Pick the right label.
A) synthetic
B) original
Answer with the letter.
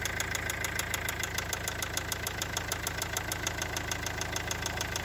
B